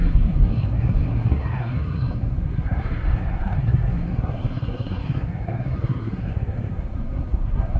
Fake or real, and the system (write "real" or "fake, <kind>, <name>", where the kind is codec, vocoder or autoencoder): fake, codec, SNAC